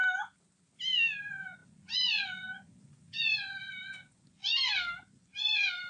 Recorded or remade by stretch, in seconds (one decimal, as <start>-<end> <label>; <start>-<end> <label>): 0.0-1.2 recorded; 1.2-4.4 remade; 4.4-5.2 recorded; 5.2-5.9 remade